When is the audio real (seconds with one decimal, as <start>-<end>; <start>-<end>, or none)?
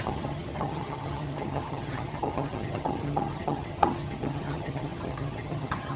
none